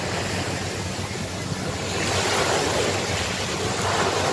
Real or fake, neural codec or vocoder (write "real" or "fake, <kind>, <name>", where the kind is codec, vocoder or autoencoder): real